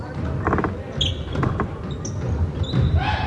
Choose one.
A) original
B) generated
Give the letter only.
A